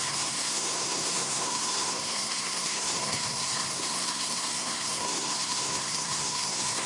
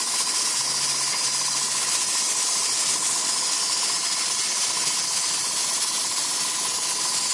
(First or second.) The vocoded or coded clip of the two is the first